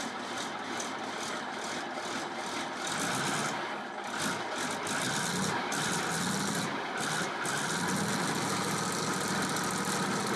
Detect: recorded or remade recorded